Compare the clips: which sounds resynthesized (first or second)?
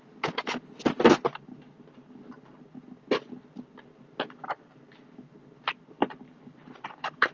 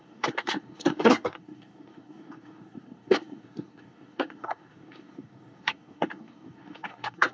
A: second